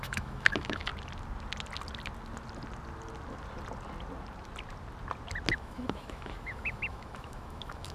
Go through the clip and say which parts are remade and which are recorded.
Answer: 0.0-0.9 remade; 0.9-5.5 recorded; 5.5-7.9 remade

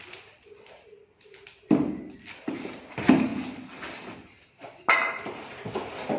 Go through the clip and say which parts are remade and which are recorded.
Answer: 0.0-6.2 recorded

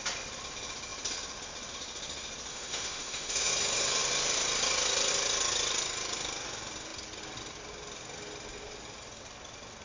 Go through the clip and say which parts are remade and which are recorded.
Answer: 0.0-2.5 recorded; 2.5-3.5 remade; 3.5-9.8 recorded

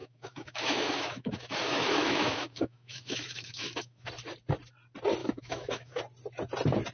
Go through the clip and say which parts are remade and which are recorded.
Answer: 0.0-4.1 remade; 4.1-5.2 recorded; 5.2-6.0 remade; 6.0-6.9 recorded